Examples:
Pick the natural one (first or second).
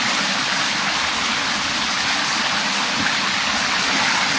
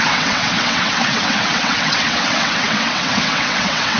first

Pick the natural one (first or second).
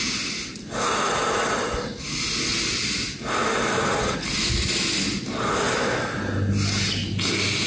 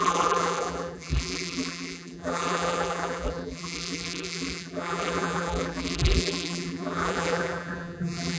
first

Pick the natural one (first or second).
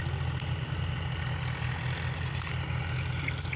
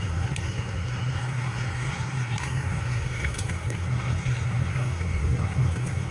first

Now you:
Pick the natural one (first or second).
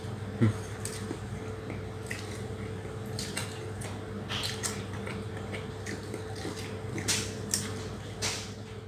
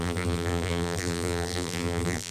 first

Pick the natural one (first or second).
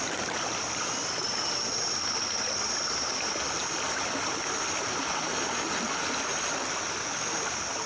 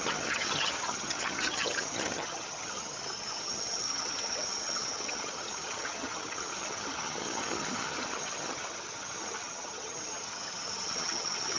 first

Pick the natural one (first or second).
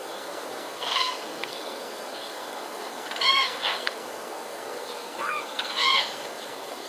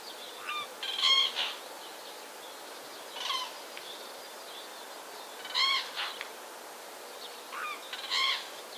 second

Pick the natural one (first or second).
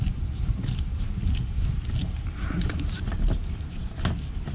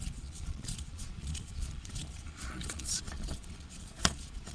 first